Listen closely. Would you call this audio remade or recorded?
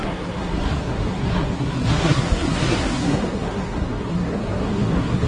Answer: remade